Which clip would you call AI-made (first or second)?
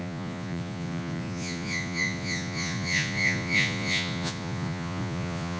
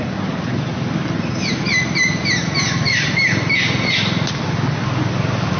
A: first